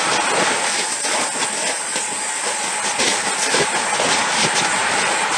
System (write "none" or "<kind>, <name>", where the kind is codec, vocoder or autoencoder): none